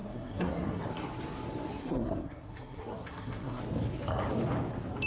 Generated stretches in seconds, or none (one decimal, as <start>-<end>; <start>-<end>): 0.0-0.8; 1.8-3.6